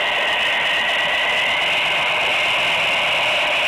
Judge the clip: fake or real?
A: real